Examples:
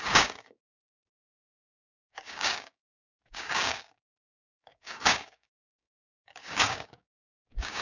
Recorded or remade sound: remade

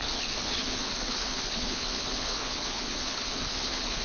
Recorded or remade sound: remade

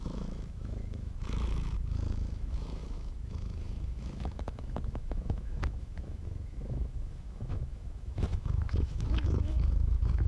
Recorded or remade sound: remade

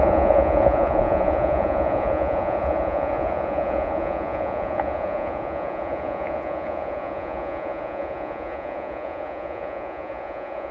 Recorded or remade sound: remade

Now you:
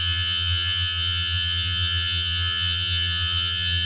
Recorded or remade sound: remade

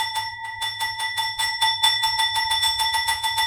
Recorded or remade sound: remade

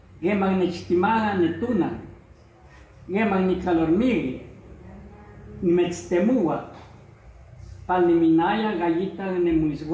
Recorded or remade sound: recorded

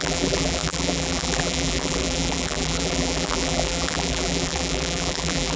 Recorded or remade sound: remade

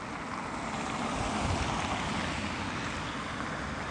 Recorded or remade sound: recorded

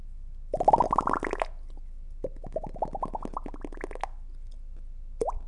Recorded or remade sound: recorded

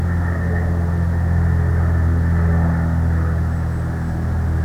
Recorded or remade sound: recorded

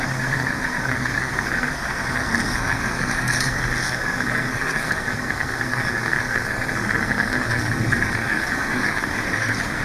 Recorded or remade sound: remade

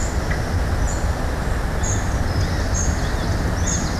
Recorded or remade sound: recorded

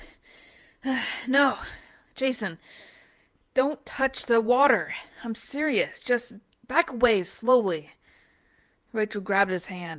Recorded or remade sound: remade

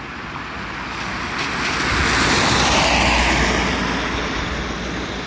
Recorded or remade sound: recorded